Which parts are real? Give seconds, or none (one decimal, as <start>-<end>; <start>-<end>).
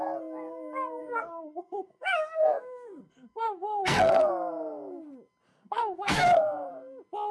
0.0-1.0; 4.3-5.5; 6.7-7.3